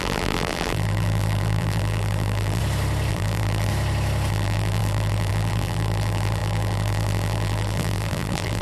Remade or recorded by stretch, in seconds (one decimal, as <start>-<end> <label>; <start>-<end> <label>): 0.0-2.6 remade; 2.6-3.1 recorded; 3.1-3.7 remade; 3.7-4.3 recorded; 4.3-8.6 remade